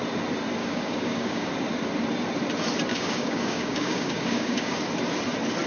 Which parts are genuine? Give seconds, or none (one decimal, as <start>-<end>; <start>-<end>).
0.0-0.6; 1.5-2.9; 4.8-5.7